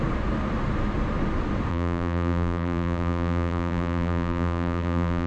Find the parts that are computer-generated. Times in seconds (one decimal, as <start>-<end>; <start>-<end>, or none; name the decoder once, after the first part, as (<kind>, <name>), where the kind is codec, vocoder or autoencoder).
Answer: 1.7-5.3 (vocoder, BigVGAN v2)